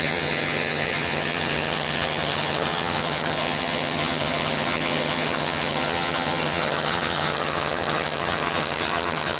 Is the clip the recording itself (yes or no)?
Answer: no